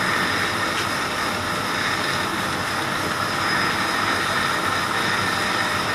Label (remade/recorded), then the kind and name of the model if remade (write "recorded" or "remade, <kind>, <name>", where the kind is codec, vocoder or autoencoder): recorded